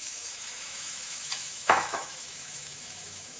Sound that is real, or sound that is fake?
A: fake